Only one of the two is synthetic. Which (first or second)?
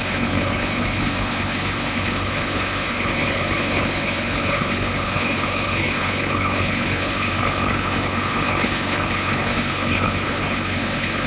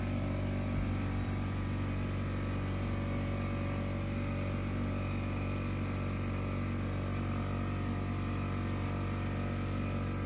first